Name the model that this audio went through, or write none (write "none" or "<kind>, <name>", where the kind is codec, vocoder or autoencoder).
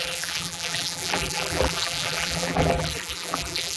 vocoder, BigVGAN v2